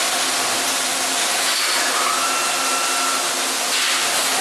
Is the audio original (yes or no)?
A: yes